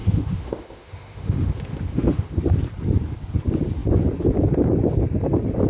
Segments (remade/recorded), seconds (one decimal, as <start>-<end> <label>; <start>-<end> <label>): 0.0-2.4 remade; 2.4-5.7 recorded